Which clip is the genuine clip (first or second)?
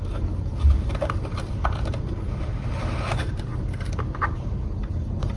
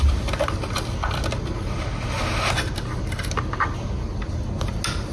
second